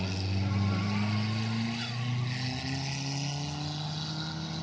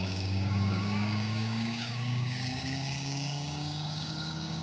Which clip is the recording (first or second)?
first